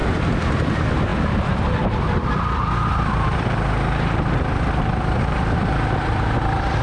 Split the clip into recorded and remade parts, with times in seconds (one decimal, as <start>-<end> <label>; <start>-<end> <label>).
0.0-0.6 recorded; 0.6-6.8 remade